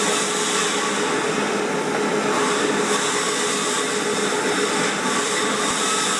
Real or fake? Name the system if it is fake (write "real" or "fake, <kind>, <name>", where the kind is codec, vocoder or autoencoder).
real